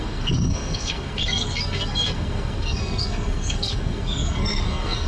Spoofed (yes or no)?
yes